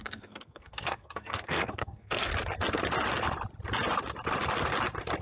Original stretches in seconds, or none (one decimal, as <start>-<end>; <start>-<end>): 2.3-5.2